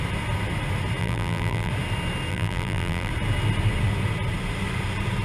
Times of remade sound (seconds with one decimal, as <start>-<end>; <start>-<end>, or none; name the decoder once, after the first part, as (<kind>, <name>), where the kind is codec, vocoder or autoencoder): 1.0-1.7 (vocoder, BigVGAN v2); 2.3-3.1